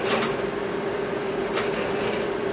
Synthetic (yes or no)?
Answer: no